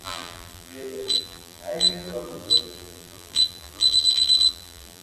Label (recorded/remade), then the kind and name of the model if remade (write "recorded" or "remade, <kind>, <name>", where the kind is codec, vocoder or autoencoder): remade, vocoder, BigVGAN v2